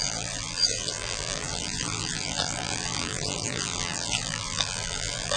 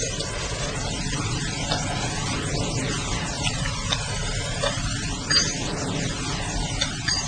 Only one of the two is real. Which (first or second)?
second